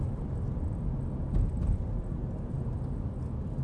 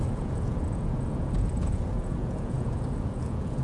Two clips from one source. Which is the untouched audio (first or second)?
first